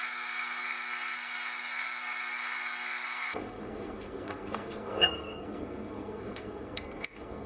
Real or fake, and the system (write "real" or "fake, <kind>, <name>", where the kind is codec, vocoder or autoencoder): fake, codec, SNAC